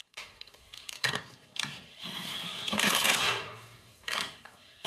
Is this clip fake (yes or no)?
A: yes